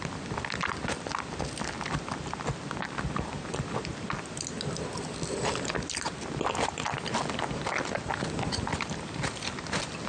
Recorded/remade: recorded